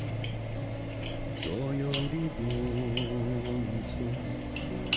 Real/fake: real